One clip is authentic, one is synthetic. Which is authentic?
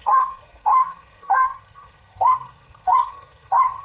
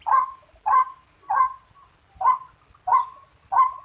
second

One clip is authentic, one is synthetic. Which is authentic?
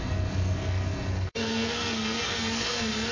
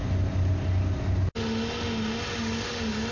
second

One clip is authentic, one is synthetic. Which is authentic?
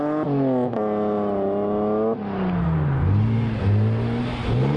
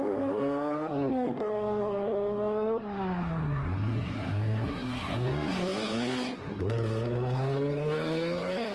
first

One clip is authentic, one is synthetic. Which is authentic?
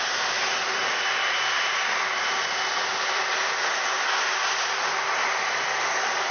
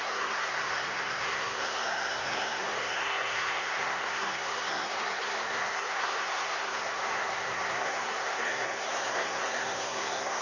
first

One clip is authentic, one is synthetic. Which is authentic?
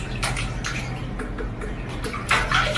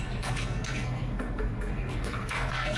first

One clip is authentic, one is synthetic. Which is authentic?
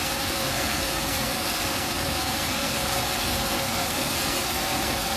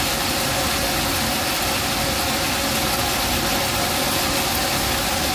second